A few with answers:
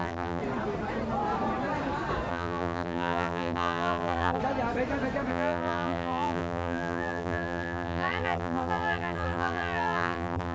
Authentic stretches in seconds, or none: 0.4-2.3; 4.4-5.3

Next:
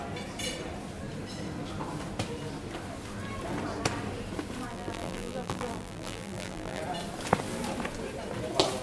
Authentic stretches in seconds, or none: 0.0-4.7; 6.8-8.8